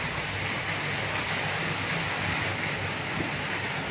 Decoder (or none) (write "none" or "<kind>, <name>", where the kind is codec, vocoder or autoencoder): none